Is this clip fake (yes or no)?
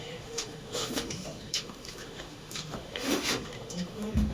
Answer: yes